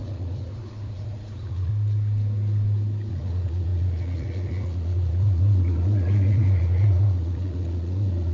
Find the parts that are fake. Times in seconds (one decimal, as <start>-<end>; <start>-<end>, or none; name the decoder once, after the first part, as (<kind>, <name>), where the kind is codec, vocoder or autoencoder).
0.0-1.7 (vocoder, Vocos); 3.1-8.3